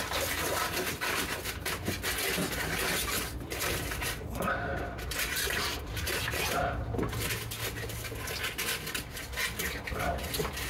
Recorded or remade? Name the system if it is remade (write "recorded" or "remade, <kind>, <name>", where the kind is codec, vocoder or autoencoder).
recorded